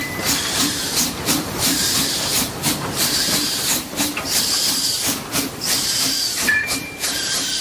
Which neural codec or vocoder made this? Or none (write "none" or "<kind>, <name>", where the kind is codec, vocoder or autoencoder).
vocoder, BigVGAN v2